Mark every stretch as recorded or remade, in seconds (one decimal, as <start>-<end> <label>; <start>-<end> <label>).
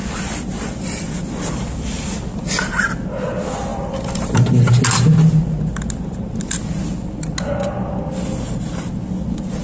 0.0-1.1 remade; 1.1-3.7 recorded; 3.7-4.7 remade; 4.7-9.6 recorded